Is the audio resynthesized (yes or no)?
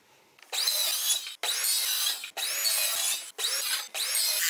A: no